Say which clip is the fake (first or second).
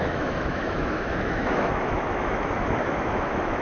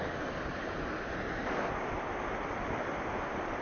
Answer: first